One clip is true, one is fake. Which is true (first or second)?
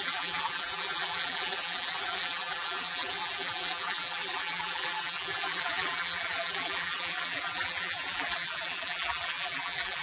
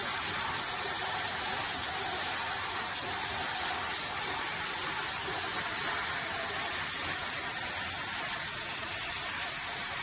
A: second